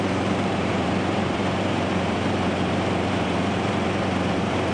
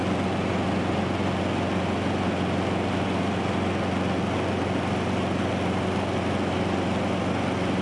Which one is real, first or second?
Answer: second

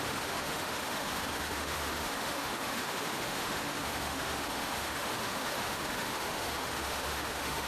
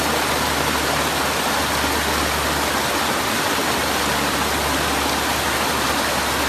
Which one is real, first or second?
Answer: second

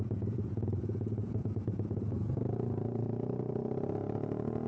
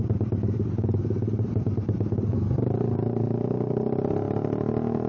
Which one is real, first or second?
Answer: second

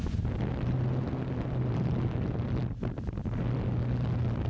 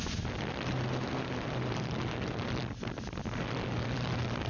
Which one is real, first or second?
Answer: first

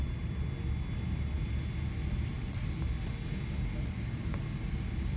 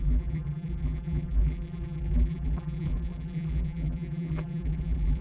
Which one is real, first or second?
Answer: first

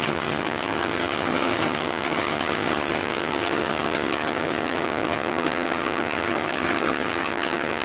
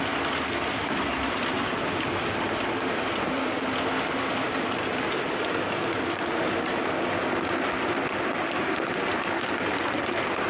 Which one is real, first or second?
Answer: second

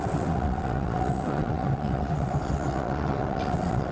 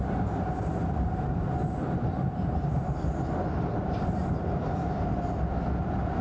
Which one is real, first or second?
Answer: second